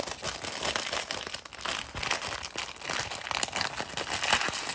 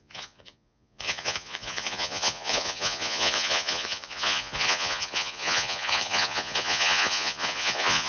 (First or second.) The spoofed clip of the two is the second